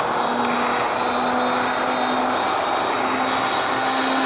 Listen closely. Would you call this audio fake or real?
real